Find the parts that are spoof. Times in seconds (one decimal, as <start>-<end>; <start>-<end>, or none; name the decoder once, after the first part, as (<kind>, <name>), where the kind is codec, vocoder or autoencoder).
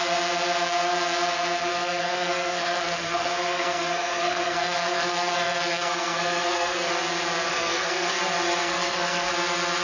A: 1.7-6.9 (codec, SNAC); 7.5-8.2; 8.6-9.3